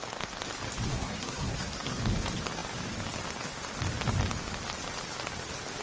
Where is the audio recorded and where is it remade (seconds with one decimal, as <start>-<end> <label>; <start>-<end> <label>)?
0.0-0.9 recorded; 0.9-2.0 remade; 2.0-5.8 recorded